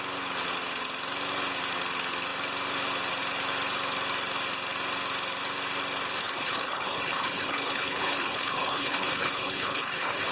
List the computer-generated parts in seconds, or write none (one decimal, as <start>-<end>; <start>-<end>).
6.2-10.3